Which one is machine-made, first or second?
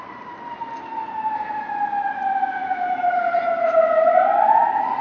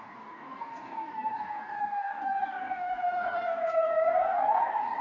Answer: second